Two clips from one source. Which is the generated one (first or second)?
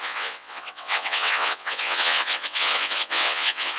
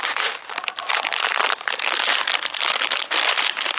first